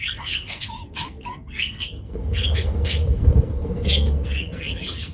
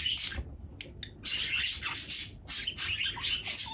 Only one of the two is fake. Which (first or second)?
first